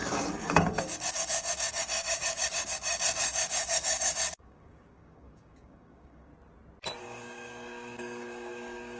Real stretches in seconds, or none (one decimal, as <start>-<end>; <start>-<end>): 6.3-7.0